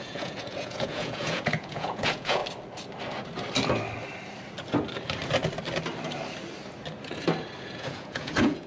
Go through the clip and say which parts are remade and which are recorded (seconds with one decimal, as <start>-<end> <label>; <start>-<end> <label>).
0.0-2.4 remade; 2.4-7.6 recorded; 7.6-8.7 remade